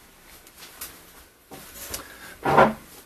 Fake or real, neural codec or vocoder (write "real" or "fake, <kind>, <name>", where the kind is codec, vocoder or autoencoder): real